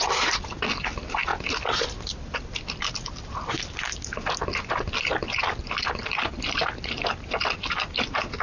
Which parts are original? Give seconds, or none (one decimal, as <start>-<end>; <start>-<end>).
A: 0.0-8.4